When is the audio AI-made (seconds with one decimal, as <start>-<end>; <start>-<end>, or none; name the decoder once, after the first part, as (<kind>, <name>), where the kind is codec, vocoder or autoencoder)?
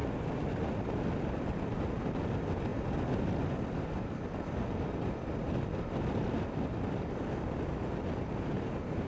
none